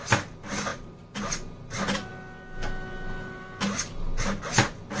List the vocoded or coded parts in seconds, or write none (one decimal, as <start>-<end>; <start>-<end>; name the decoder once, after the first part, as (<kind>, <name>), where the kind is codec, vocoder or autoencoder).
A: 0.7-1.2 (vocoder, BigVGAN v2)